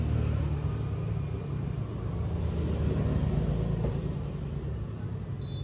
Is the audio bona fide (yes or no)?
yes